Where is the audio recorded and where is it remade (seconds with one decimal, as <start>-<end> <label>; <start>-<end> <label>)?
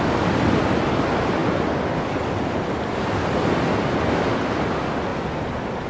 0.0-5.9 recorded